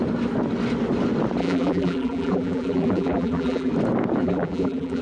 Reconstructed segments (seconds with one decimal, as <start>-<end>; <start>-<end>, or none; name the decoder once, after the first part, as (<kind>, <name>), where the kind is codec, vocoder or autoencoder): 1.4-3.7 (vocoder, BigVGAN v2); 4.2-5.0